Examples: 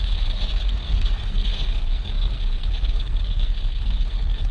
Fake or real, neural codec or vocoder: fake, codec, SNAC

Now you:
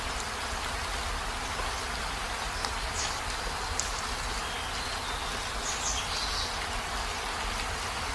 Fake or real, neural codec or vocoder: real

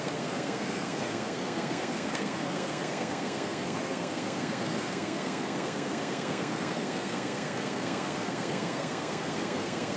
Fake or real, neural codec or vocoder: fake, codec, SNAC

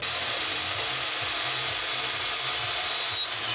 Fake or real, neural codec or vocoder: real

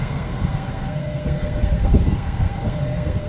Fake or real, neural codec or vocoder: fake, codec, SNAC